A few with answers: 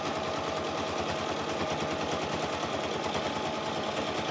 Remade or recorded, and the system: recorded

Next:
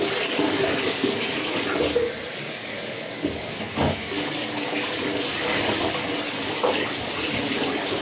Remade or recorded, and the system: remade, codec, DAC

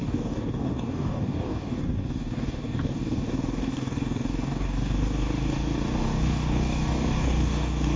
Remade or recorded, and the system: remade, codec, DAC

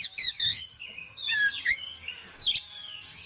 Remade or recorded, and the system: remade, codec, DAC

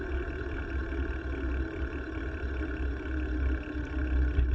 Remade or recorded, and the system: recorded